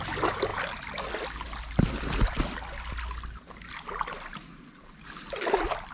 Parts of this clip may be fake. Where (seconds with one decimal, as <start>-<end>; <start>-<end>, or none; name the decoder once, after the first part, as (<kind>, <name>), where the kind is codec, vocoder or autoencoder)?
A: none